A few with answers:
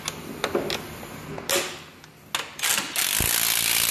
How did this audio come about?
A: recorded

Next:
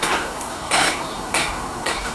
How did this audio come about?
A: remade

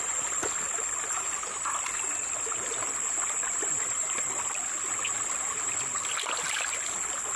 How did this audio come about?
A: recorded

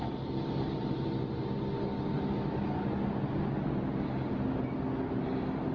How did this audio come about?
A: recorded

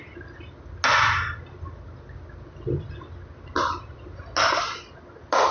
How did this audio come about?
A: recorded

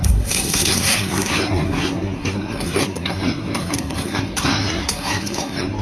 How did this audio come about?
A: remade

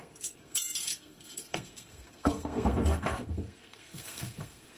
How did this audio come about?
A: remade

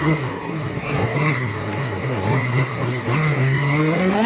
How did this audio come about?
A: remade